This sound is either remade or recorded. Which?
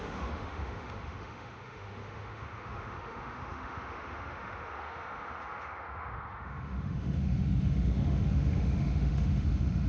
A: remade